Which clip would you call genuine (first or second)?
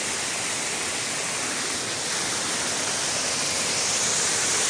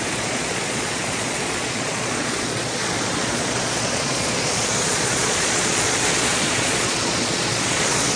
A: first